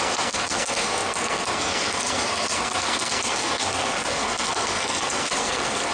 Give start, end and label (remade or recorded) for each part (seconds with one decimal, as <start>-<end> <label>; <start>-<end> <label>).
0.0-5.9 remade